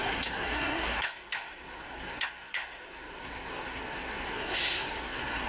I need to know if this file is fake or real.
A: fake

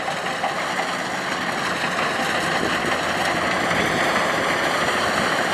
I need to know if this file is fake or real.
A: real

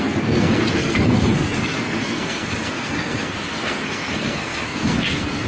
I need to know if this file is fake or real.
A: fake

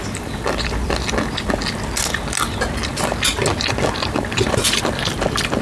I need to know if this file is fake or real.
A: real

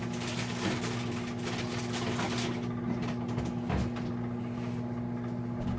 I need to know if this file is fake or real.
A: real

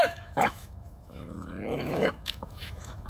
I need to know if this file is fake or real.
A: fake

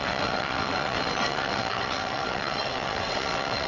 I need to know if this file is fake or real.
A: fake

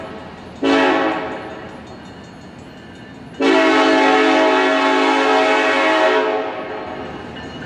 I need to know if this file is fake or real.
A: real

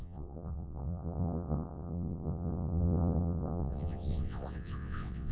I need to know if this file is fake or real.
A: fake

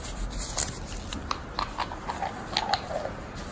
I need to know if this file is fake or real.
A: real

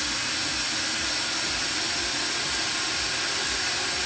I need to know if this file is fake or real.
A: real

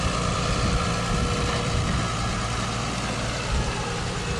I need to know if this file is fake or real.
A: real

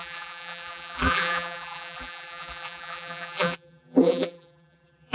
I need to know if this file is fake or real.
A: fake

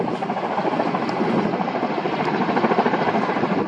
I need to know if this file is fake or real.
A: real